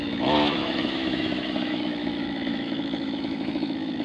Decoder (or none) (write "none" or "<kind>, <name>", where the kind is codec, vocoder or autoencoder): autoencoder, DAC-VAE